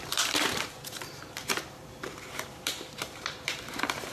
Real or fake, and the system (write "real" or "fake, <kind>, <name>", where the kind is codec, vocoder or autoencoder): fake, vocoder, BigVGAN v2